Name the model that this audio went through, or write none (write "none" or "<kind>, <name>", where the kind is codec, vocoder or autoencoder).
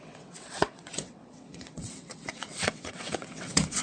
vocoder, WaveNeXt